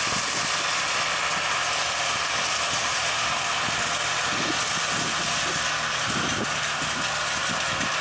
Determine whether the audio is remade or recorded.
recorded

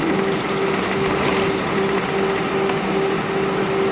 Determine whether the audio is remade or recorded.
recorded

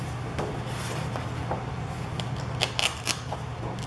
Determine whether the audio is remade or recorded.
recorded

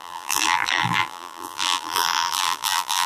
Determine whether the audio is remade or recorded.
remade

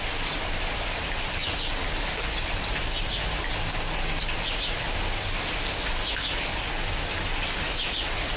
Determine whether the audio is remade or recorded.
recorded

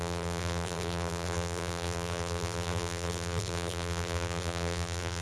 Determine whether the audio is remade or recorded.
remade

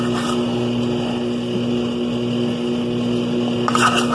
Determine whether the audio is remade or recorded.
recorded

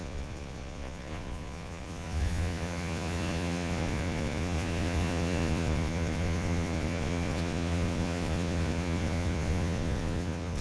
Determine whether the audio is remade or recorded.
remade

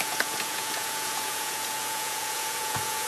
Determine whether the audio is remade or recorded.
remade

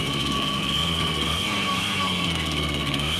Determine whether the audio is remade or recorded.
remade